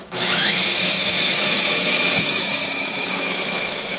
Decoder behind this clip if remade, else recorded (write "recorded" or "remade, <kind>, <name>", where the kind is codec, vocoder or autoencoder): remade, autoencoder, DAC-VAE